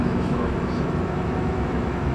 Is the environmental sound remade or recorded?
remade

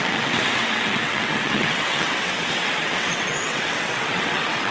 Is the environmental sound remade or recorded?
remade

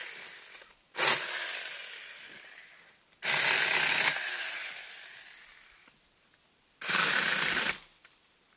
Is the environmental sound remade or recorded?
recorded